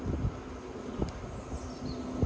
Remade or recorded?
recorded